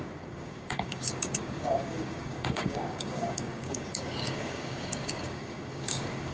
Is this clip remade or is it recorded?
remade